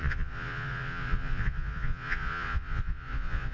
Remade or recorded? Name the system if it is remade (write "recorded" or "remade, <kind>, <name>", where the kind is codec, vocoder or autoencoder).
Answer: remade, vocoder, Vocos